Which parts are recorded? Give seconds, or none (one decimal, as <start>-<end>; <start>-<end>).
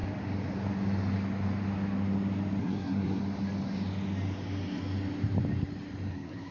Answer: 0.0-2.6; 3.2-6.1